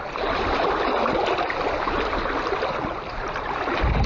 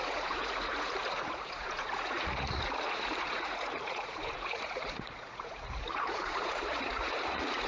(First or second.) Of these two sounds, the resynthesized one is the second